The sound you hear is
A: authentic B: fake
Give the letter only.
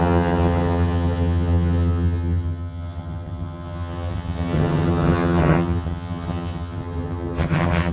B